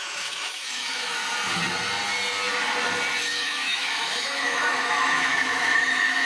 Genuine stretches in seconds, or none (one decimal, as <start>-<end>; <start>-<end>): 1.2-3.2